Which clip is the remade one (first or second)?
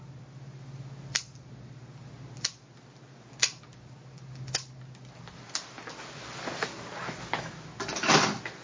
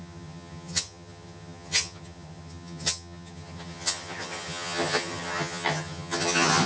second